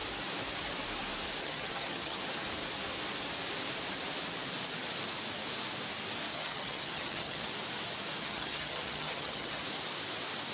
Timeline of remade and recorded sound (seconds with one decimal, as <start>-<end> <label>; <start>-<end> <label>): 0.0-1.4 recorded; 1.4-2.2 remade; 2.2-6.3 recorded; 6.3-7.5 remade; 7.5-8.2 recorded; 8.2-9.6 remade; 9.6-10.5 recorded